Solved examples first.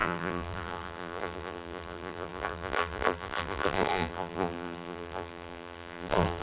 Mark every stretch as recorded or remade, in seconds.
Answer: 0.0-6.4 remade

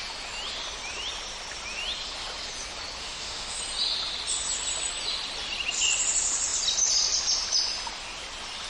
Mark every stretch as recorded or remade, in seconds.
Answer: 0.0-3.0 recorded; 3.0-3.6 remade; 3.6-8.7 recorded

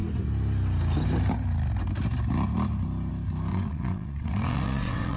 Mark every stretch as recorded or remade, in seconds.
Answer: 0.0-3.5 recorded; 3.5-5.2 remade

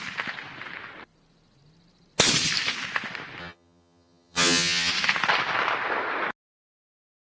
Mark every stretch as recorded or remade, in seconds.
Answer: 0.0-3.4 recorded; 3.4-4.9 remade; 4.9-7.2 recorded

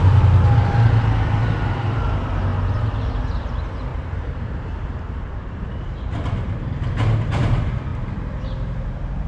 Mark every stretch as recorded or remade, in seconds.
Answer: 0.0-1.4 recorded; 1.4-2.0 remade; 2.0-3.9 recorded; 3.9-6.6 remade; 6.6-7.9 recorded; 7.9-9.3 remade